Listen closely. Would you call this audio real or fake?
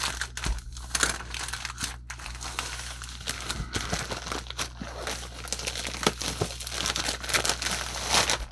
real